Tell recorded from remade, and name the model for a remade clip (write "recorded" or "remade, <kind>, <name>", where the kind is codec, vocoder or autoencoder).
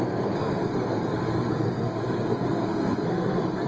remade, codec, SNAC